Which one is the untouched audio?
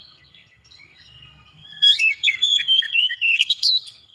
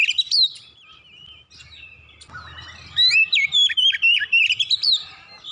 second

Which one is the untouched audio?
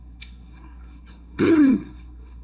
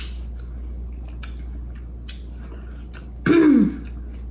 second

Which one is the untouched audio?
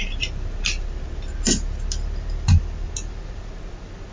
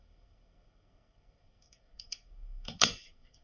first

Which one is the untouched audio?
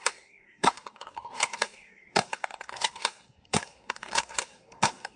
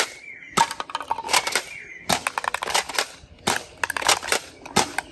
second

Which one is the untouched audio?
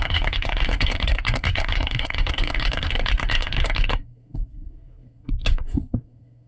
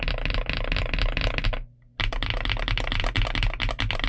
second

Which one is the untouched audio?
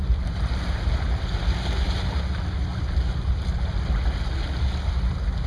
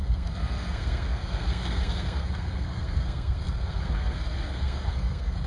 first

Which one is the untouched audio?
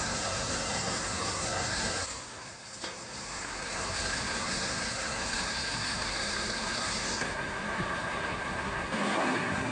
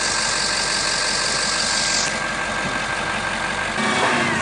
second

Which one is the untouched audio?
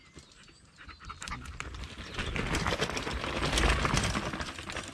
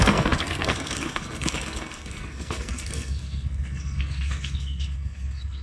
first